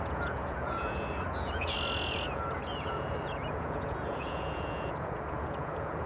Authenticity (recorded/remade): remade